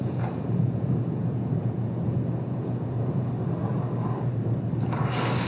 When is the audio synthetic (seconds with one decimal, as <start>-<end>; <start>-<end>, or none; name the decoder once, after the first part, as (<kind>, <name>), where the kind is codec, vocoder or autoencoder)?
0.0-3.3 (vocoder, Vocos)